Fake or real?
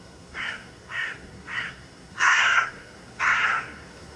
fake